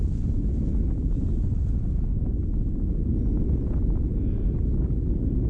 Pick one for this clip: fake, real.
real